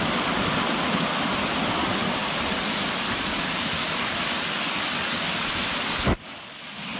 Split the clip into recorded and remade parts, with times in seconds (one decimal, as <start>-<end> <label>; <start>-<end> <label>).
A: 0.0-7.0 recorded